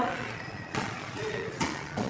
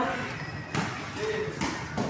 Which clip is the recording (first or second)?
second